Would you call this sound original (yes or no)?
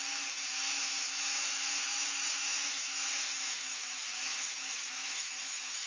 no